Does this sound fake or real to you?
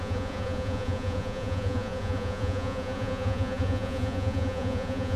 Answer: fake